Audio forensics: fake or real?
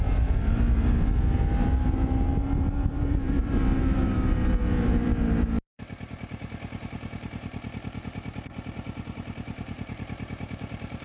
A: fake